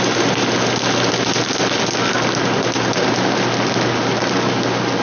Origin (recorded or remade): recorded